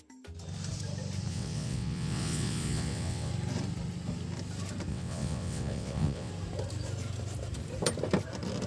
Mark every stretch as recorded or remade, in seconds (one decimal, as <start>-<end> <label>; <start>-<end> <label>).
0.0-1.3 recorded; 1.3-3.3 remade; 3.3-4.9 recorded; 4.9-6.3 remade; 6.3-8.7 recorded